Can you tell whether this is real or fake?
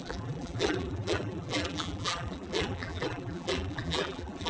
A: fake